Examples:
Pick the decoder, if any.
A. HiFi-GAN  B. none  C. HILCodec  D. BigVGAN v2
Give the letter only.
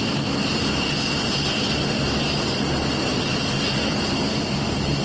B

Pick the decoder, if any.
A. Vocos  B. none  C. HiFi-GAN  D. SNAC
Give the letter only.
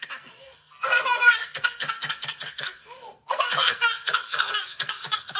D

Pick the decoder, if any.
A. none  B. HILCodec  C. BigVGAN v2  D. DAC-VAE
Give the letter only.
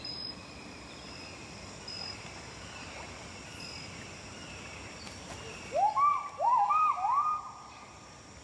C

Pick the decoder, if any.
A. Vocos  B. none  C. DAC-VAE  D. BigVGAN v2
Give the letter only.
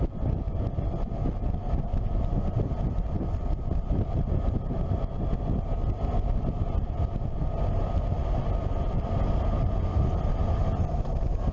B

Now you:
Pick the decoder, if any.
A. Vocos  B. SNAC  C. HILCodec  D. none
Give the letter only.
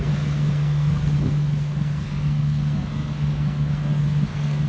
B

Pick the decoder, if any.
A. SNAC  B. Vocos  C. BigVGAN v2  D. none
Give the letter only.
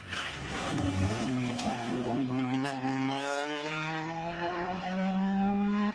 A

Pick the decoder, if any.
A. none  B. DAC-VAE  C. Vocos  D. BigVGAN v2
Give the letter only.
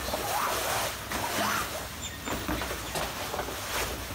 A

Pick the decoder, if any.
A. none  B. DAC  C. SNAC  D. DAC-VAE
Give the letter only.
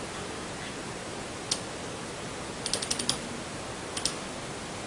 A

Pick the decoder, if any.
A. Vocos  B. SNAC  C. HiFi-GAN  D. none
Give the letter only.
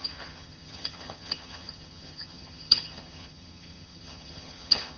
C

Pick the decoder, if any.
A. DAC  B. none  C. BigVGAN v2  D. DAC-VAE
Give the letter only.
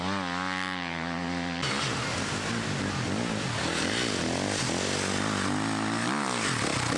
B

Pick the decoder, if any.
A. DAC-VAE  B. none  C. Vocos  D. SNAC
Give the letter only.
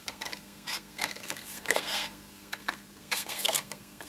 D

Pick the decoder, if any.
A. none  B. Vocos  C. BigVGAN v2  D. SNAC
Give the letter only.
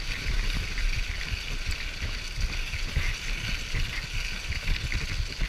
A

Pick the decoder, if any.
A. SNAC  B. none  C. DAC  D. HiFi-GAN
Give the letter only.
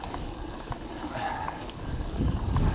C